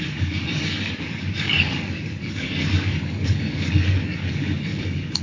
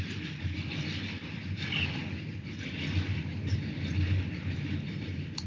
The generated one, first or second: first